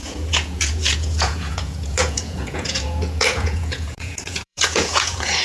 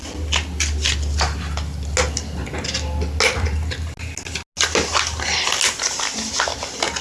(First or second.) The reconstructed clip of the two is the first